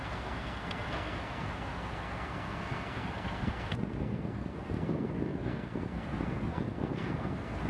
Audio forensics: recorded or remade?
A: remade